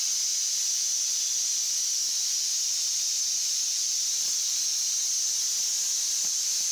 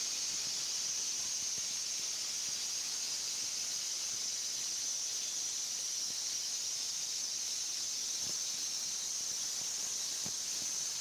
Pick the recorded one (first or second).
second